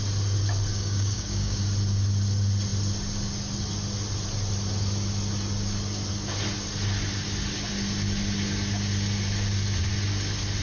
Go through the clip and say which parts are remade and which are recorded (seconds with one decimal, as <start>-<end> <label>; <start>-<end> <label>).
0.0-0.7 recorded; 0.7-1.6 remade; 1.6-10.6 recorded